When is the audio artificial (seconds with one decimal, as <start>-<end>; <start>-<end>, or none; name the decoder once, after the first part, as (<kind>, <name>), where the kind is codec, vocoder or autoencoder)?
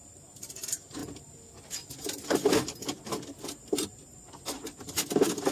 none